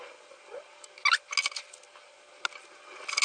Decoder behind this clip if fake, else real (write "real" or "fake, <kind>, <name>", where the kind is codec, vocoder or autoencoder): real